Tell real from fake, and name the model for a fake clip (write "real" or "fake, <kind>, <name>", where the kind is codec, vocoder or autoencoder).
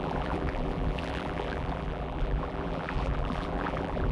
fake, vocoder, BigVGAN v2